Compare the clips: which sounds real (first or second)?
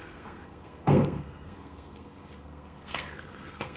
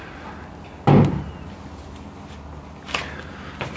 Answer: second